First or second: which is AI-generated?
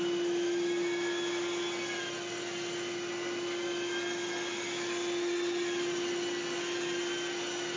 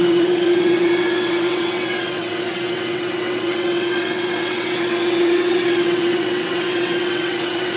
second